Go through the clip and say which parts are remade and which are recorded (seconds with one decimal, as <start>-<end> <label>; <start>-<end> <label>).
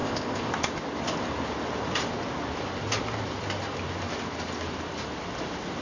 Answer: 0.0-0.5 remade; 0.5-5.8 recorded